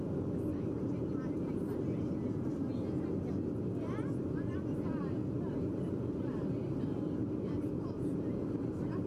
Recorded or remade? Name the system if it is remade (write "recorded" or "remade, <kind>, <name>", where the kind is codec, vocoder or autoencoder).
recorded